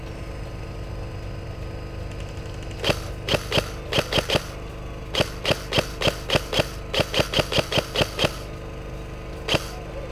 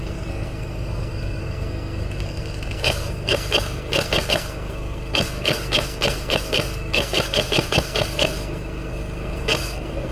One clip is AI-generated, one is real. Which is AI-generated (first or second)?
second